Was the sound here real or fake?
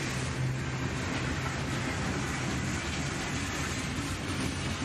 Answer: real